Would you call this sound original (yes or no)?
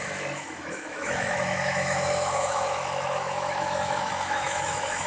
no